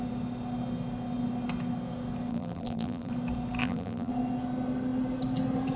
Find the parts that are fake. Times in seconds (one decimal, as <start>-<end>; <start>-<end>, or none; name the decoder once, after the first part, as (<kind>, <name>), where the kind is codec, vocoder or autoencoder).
2.3-3.1 (vocoder, BigVGAN v2); 3.6-4.1